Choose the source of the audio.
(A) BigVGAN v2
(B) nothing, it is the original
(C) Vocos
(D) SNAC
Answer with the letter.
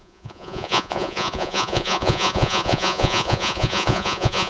C